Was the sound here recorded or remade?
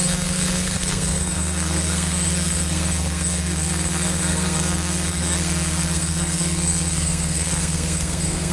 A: remade